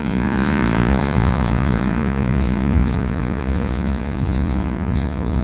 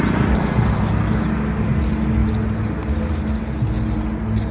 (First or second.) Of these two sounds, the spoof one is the first